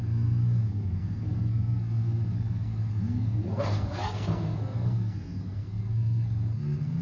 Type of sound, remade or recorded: remade